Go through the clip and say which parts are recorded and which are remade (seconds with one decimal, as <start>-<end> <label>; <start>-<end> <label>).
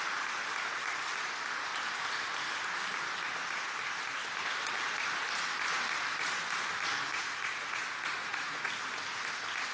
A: 0.0-7.1 recorded; 7.1-8.7 remade; 8.7-9.7 recorded